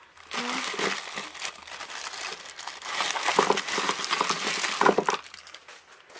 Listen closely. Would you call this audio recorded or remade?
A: recorded